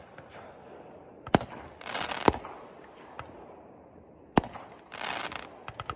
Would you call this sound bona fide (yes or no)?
yes